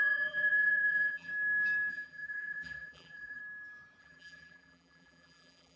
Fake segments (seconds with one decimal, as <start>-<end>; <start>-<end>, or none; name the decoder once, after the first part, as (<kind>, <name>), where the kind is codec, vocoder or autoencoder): 0.0-1.3 (vocoder, BigVGAN v2); 1.9-3.4; 4.0-5.8